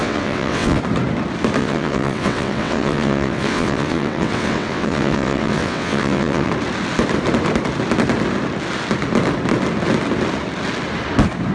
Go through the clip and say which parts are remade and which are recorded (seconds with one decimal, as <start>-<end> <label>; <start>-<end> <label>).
0.0-0.8 remade; 0.8-1.6 recorded; 1.6-6.5 remade; 6.5-11.5 recorded